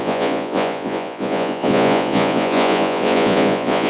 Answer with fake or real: fake